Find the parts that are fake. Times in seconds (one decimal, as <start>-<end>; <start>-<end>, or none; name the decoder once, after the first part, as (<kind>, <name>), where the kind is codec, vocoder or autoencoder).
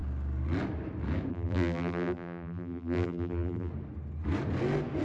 1.3-3.7 (vocoder, BigVGAN v2)